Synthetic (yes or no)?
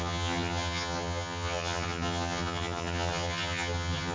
yes